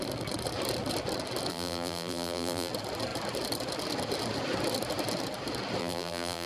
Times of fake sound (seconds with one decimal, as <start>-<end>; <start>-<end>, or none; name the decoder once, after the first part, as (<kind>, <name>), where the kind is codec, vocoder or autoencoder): 1.5-2.7 (vocoder, BigVGAN v2); 5.8-6.5